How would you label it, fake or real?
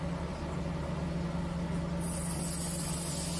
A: real